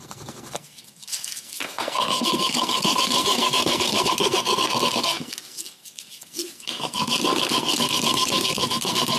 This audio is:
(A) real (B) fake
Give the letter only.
B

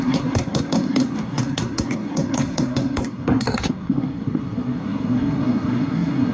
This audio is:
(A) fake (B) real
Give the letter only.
A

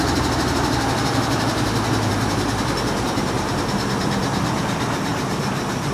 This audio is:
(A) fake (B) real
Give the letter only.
A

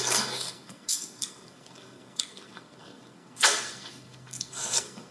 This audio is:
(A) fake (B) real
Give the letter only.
A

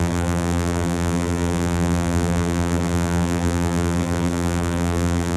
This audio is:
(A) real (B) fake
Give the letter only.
B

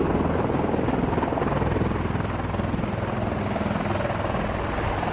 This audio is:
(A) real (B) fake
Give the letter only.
A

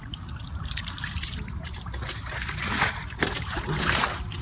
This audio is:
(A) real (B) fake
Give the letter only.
B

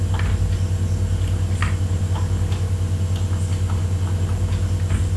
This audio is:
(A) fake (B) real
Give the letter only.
B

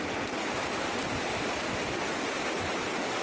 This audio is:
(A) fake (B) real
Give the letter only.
B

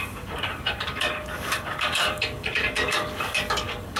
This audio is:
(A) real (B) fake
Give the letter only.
B